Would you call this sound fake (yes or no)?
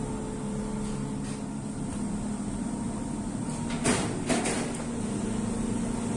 no